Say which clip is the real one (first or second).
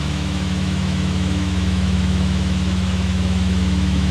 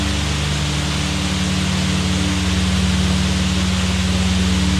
second